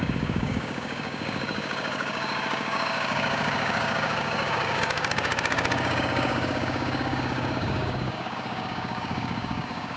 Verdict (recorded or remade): remade